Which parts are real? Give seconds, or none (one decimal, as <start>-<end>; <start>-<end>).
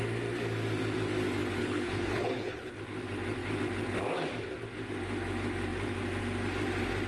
0.0-1.6; 2.8-7.1